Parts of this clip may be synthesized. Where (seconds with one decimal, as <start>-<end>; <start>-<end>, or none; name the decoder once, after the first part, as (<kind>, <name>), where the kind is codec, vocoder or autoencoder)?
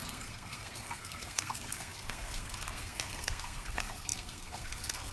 0.0-5.1 (codec, SNAC)